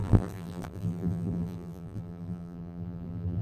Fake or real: fake